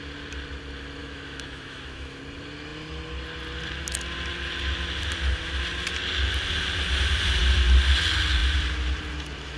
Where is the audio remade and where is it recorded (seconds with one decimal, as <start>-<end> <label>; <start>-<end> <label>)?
0.0-1.0 recorded; 1.0-2.2 remade; 2.2-9.6 recorded